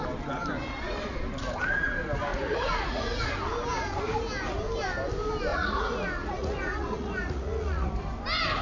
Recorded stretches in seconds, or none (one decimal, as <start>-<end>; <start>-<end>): 0.0-2.3; 3.3-5.5; 7.9-8.6